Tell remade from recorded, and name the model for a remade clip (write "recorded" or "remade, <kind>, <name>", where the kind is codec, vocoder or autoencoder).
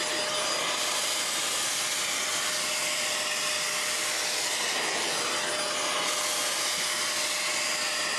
recorded